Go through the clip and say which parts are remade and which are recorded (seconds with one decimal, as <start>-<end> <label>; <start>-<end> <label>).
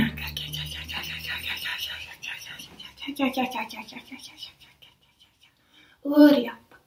0.0-1.7 recorded; 1.7-2.6 remade; 2.6-5.7 recorded; 5.7-6.9 remade